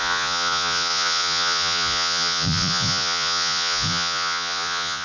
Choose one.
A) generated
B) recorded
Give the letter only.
A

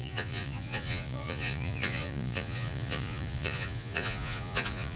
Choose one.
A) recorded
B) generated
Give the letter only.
B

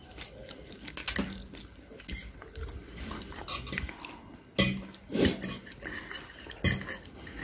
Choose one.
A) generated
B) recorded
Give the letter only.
B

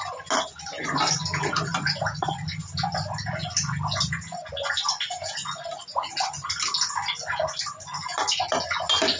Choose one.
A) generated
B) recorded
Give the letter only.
B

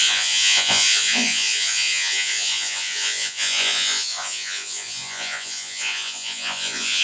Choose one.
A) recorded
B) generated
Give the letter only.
B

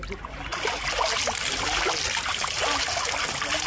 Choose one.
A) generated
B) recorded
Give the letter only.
B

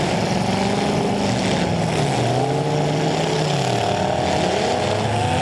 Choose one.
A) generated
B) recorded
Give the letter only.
B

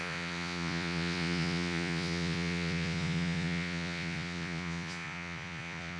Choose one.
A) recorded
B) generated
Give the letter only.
B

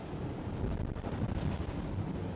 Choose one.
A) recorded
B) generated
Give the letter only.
A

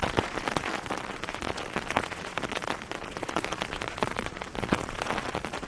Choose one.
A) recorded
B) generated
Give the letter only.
B